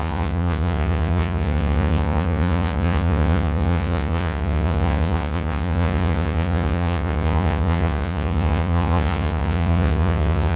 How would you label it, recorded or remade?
remade